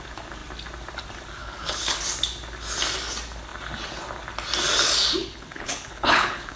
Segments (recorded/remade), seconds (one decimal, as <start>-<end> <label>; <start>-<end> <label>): 0.0-1.4 recorded; 1.4-2.0 remade; 2.0-5.2 recorded; 5.2-6.6 remade